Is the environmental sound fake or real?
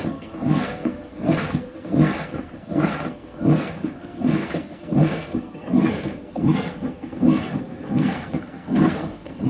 fake